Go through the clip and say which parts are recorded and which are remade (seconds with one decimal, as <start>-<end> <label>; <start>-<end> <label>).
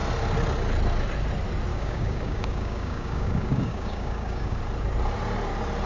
0.0-1.7 recorded; 1.7-4.6 remade; 4.6-5.9 recorded